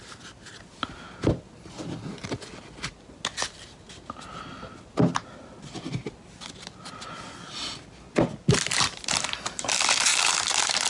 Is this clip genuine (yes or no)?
yes